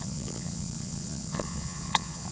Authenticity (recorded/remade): remade